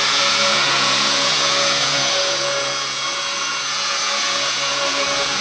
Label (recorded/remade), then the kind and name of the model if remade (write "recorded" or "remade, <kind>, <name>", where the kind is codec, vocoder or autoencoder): remade, vocoder, Vocos